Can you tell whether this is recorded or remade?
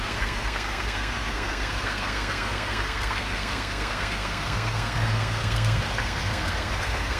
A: remade